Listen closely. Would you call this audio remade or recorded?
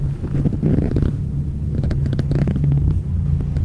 recorded